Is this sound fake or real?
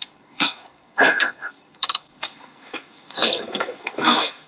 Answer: fake